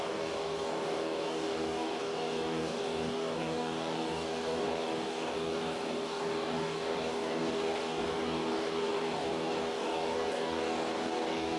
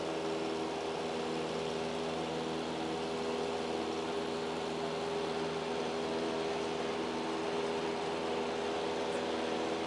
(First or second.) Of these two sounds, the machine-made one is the first